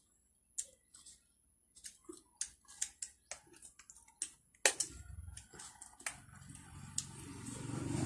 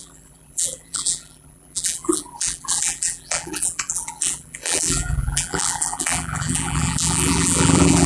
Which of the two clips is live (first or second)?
first